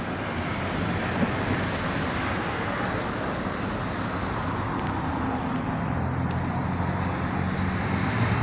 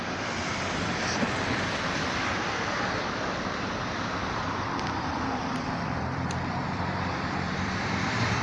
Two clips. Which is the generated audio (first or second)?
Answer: second